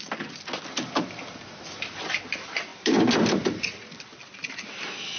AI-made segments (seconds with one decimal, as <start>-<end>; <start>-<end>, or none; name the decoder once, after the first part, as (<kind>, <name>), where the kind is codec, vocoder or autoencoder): none